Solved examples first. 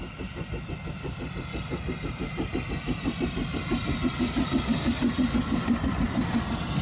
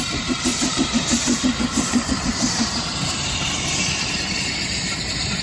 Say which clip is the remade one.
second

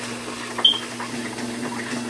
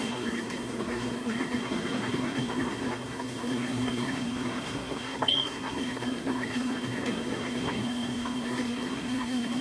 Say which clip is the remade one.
second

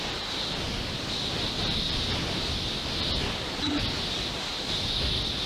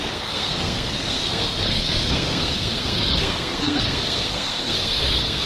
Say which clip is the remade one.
second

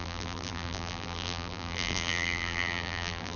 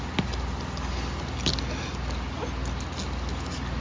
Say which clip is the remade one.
first